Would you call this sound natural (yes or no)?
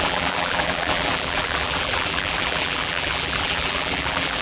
no